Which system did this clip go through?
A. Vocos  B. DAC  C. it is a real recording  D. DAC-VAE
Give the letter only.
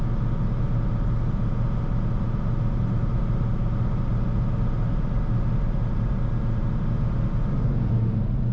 C